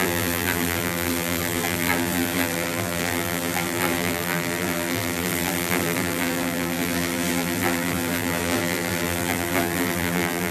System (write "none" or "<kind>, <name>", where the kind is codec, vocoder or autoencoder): vocoder, BigVGAN v2